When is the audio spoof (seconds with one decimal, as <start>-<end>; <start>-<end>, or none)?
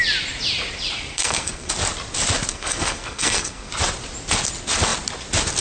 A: 1.1-1.7; 2.5-3.7